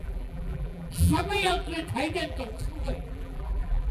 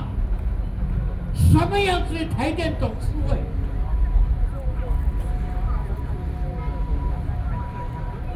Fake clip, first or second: first